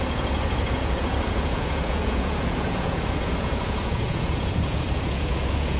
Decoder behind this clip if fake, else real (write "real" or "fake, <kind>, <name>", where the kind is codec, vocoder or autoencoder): fake, vocoder, Vocos